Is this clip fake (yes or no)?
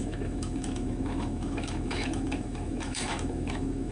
yes